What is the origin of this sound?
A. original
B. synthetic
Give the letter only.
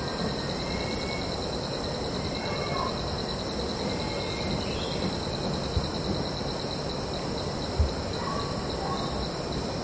A